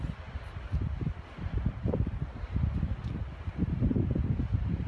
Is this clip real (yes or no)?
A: yes